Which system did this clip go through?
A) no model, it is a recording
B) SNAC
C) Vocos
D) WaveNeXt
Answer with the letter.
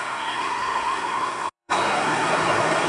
B